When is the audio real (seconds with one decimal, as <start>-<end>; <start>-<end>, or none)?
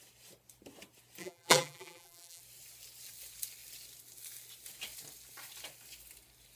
0.0-1.2; 2.4-6.6